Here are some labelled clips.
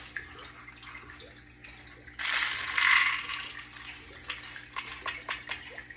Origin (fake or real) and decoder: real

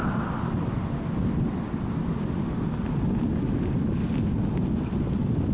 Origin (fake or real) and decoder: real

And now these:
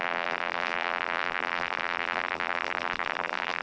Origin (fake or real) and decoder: fake, vocoder, BigVGAN v2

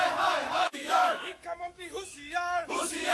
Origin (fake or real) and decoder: fake, autoencoder, DAC-VAE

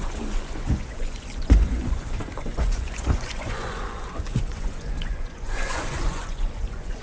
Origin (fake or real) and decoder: fake, vocoder, Vocos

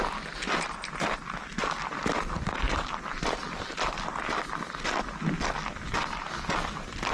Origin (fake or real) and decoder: real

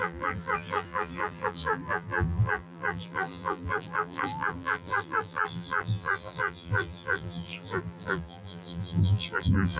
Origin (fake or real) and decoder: fake, vocoder, BigVGAN v2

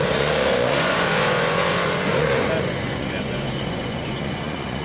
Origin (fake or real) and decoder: fake, vocoder, Vocos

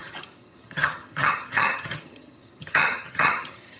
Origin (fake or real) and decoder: fake, vocoder, HiFi-GAN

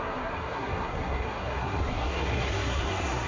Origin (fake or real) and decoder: fake, codec, SNAC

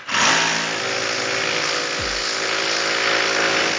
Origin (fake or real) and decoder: real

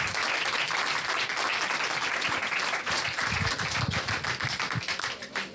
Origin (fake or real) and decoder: real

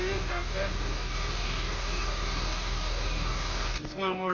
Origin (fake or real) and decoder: fake, codec, DAC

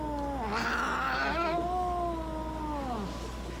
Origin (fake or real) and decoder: real